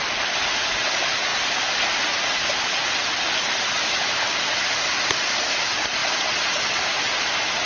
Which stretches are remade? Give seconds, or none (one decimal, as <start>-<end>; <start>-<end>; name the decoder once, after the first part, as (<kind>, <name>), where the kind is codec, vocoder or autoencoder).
none